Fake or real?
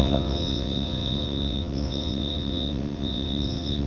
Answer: fake